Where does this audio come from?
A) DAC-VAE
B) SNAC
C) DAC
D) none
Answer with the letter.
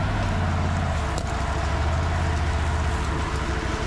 D